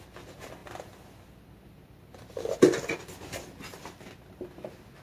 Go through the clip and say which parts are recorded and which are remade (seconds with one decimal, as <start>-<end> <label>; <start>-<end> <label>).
0.0-5.0 recorded

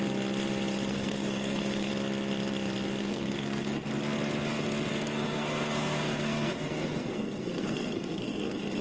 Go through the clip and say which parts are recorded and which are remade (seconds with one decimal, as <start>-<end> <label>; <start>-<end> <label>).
0.0-0.9 recorded; 0.9-1.9 remade; 1.9-3.0 recorded; 3.0-3.9 remade; 3.9-4.9 recorded; 4.9-8.8 remade

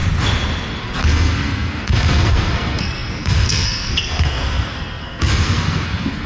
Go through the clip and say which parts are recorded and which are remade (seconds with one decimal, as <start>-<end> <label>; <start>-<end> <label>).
0.0-0.8 recorded; 0.8-6.3 remade

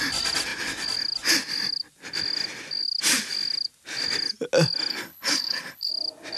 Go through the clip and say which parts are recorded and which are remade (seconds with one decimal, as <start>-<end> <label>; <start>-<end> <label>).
0.0-4.9 recorded; 4.9-5.9 remade; 5.9-6.4 recorded

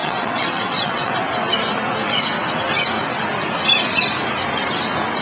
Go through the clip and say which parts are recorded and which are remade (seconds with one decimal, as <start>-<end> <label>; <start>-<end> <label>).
0.0-1.1 remade; 1.1-5.2 recorded

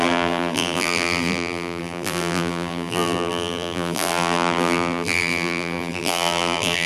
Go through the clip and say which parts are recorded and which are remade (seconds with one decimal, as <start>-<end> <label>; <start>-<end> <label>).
0.0-6.9 remade